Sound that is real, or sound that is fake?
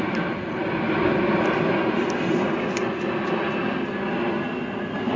real